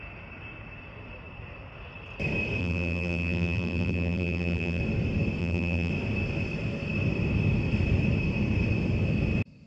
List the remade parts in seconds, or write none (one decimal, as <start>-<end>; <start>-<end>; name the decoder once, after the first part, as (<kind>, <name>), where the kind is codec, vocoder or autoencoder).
2.6-4.8 (vocoder, BigVGAN v2); 5.4-5.9